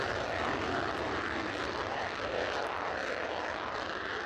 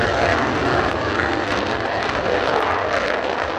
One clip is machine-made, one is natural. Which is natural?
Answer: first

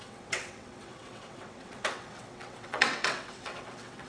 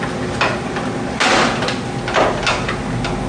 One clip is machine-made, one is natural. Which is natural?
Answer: second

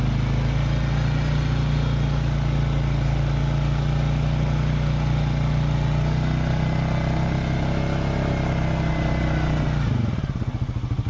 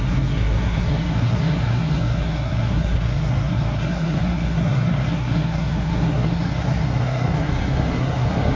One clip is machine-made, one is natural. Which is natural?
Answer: first